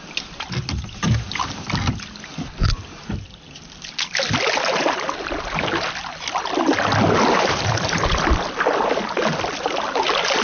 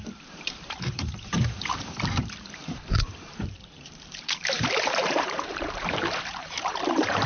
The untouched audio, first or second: first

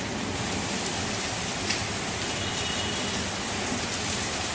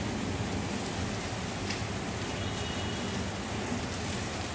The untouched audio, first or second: second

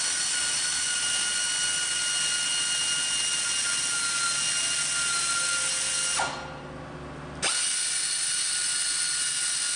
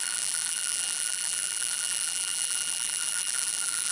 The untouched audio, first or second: first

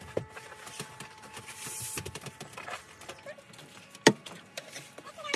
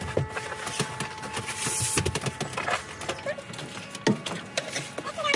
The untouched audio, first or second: second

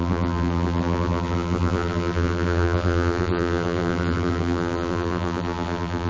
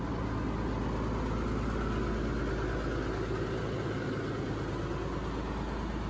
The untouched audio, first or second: second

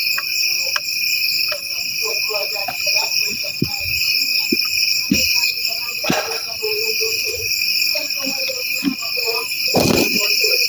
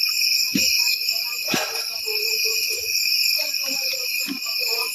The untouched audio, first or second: second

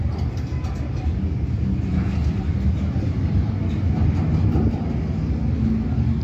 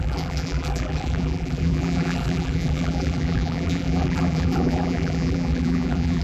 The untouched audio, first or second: first